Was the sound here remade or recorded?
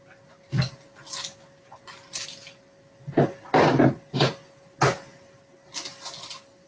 recorded